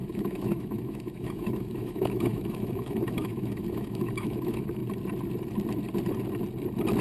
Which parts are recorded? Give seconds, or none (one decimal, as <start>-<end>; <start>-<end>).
4.8-7.0